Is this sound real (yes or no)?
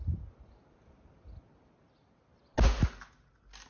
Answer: yes